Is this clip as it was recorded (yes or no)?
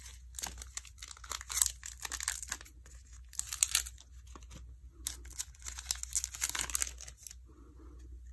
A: yes